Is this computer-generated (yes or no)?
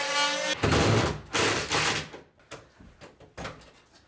no